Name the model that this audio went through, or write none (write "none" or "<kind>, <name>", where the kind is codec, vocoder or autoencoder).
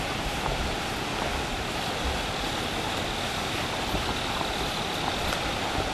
none